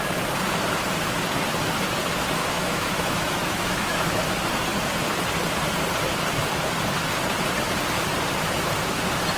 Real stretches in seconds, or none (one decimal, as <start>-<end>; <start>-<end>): 0.0-2.4; 4.3-9.4